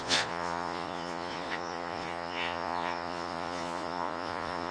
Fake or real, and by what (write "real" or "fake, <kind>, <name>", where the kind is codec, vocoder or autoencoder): fake, vocoder, Vocos